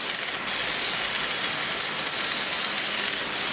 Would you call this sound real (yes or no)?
yes